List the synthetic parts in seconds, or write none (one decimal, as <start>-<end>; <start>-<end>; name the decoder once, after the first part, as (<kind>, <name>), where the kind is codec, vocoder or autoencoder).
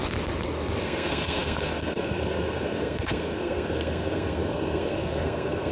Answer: 0.8-5.7 (codec, SNAC)